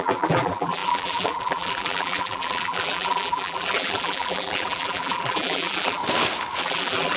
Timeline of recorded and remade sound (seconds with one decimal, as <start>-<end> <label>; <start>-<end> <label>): 0.0-6.0 remade; 6.0-6.6 recorded; 6.6-7.2 remade